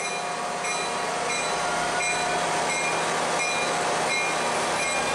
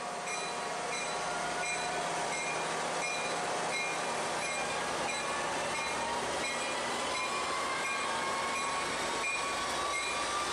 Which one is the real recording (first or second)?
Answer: first